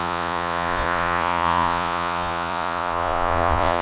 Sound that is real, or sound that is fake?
fake